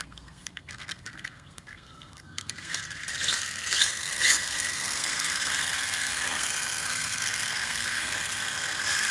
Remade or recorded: remade